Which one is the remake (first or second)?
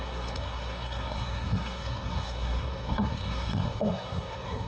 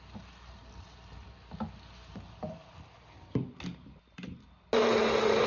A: first